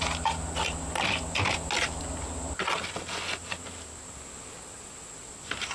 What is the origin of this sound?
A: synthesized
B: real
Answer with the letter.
B